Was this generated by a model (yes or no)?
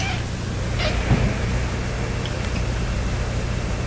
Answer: no